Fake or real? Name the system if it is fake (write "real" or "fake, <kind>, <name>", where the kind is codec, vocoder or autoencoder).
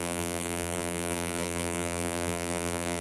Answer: fake, vocoder, BigVGAN v2